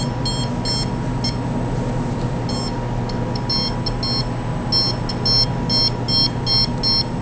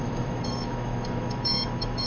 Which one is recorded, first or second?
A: first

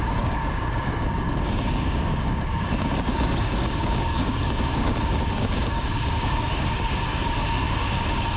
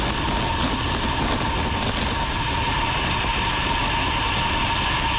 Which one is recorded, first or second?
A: second